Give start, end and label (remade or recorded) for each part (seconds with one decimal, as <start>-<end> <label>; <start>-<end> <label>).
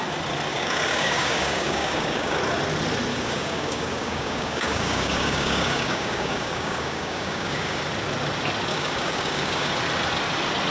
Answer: 0.0-0.5 recorded; 0.5-2.4 remade; 2.4-3.1 recorded; 3.1-7.8 remade; 7.8-8.7 recorded; 8.7-9.7 remade; 9.7-10.7 recorded